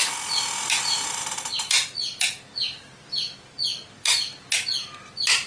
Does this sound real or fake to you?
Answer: real